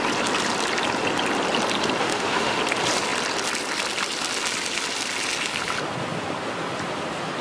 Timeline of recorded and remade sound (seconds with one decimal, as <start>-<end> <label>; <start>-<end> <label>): 0.0-2.0 recorded; 2.0-2.6 remade; 2.6-7.4 recorded